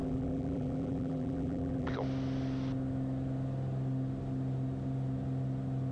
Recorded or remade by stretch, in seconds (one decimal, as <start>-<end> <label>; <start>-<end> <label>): 0.0-1.9 remade; 1.9-5.9 recorded